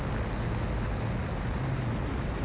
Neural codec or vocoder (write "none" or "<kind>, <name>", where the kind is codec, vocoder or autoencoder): none